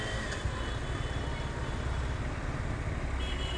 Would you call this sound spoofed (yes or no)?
no